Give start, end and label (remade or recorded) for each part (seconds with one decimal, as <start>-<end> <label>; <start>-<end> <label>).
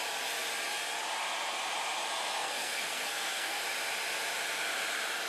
0.0-2.4 recorded; 2.4-3.6 remade; 3.6-5.3 recorded